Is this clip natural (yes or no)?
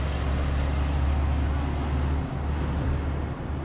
yes